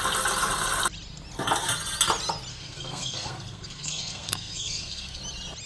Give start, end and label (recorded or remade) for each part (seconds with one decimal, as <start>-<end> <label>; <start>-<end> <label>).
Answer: 0.0-2.5 recorded; 2.5-5.2 remade; 5.2-5.7 recorded